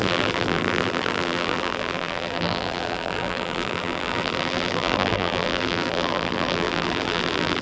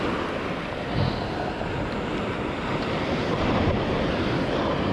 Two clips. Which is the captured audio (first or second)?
second